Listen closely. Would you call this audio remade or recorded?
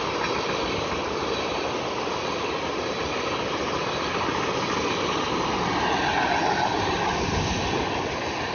recorded